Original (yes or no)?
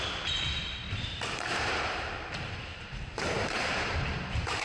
no